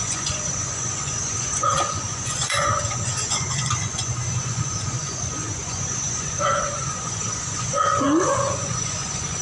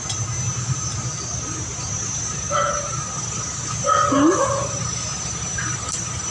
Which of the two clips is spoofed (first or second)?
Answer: first